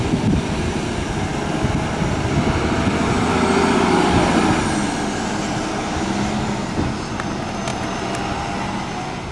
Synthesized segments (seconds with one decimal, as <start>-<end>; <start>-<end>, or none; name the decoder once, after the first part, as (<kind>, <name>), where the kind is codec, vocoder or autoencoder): none